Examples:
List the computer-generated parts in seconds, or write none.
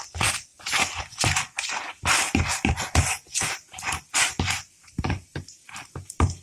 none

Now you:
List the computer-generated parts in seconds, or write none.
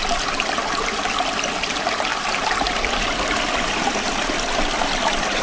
none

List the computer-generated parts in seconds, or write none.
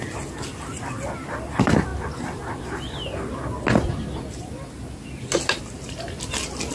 none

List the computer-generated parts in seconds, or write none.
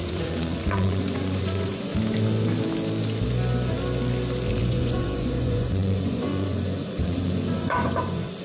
0.0-1.9; 4.6-8.4